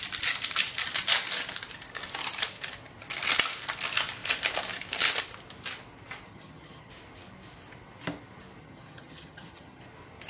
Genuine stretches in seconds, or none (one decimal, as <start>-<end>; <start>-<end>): 0.0-6.3; 6.9-8.6; 9.8-10.3